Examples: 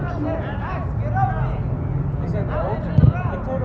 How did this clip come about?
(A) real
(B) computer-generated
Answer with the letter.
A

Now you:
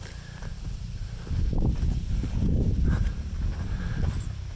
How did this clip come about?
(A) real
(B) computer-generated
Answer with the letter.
A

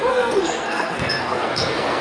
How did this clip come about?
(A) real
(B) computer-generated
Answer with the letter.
B